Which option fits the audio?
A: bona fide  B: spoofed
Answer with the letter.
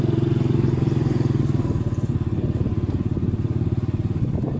A